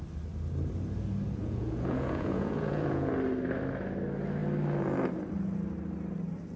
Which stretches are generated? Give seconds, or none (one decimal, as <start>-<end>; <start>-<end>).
1.4-3.1